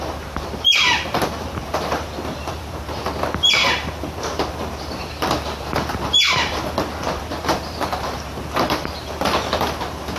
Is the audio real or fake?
fake